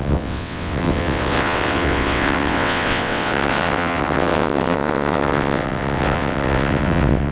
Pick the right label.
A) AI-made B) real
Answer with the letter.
A